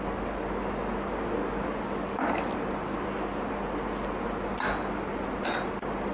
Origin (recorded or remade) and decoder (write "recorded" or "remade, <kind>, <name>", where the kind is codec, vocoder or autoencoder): recorded